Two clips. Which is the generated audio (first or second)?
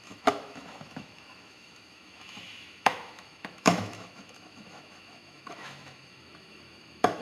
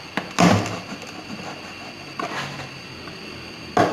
first